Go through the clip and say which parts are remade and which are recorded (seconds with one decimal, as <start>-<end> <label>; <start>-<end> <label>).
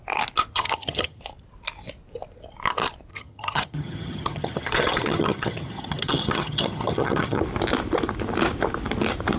0.0-0.5 recorded; 0.5-1.2 remade; 1.2-3.1 recorded; 3.1-7.4 remade; 7.4-9.4 recorded